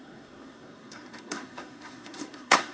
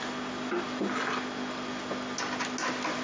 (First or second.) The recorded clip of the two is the second